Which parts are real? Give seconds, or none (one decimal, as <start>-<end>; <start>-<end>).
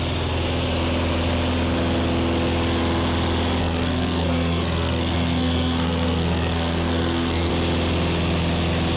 0.0-3.6; 7.5-9.0